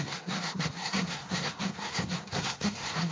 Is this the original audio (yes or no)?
no